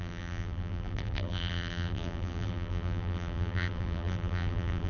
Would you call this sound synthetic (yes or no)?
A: yes